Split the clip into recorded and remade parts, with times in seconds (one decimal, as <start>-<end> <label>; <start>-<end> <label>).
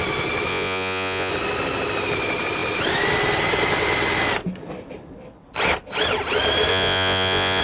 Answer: 0.0-0.5 recorded; 0.5-1.3 remade; 1.3-6.7 recorded; 6.7-7.6 remade